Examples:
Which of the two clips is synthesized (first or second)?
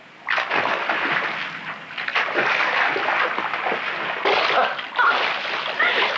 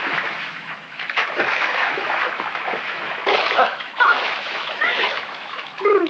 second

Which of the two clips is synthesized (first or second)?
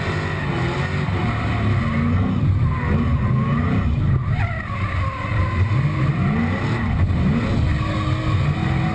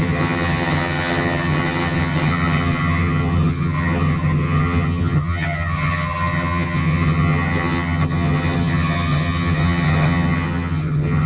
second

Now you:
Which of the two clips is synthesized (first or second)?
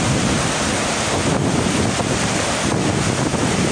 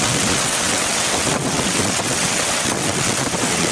second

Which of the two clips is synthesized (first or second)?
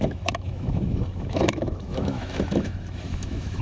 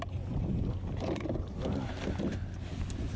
first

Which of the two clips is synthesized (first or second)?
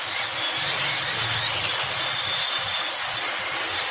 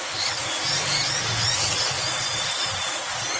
second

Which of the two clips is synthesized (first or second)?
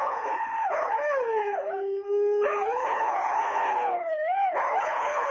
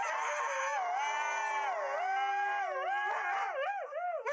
first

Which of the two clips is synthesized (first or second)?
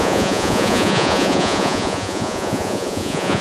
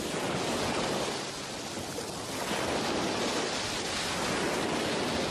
first